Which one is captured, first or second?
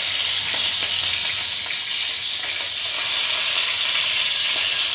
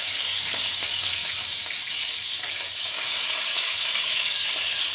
first